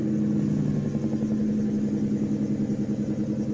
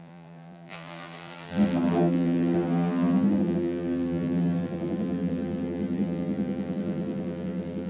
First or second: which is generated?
second